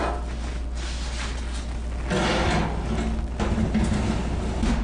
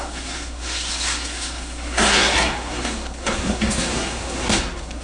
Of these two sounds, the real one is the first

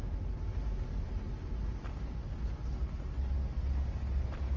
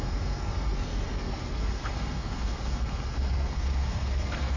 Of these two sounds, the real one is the first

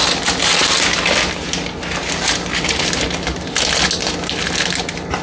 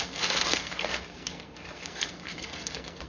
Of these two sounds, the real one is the first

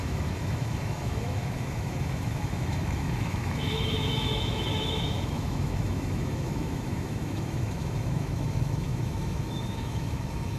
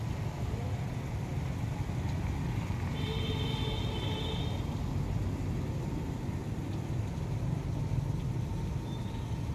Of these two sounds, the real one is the second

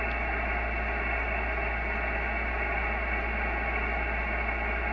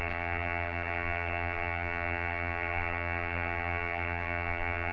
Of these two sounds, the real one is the first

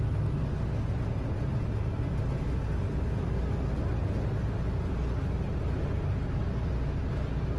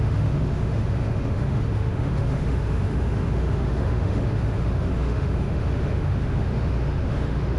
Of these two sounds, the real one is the first